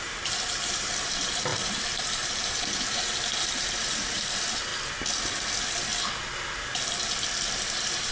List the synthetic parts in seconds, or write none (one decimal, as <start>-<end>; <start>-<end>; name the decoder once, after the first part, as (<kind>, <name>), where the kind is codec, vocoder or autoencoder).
0.0-4.7 (vocoder, BigVGAN v2); 7.5-8.1